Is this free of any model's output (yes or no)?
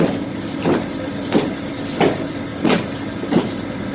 yes